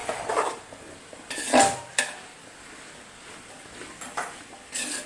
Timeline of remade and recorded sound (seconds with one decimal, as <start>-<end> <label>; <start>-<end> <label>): 0.0-5.1 recorded